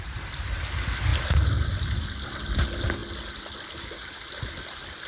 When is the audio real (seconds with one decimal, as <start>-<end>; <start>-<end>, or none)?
0.0-3.0; 3.7-5.1